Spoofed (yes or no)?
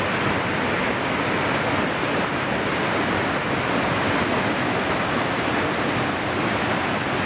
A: no